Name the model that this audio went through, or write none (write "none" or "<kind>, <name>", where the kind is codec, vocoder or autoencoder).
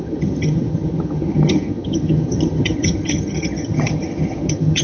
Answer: vocoder, HiFi-GAN